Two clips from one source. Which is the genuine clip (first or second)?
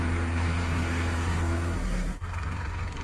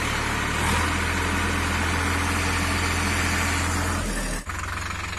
second